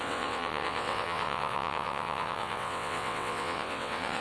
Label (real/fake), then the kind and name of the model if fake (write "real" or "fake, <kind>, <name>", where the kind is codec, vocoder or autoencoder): fake, vocoder, WaveNeXt